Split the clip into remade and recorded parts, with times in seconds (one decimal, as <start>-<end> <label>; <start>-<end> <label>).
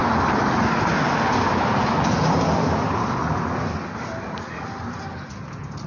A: 0.0-5.9 recorded